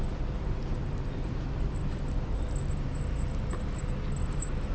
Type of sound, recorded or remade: recorded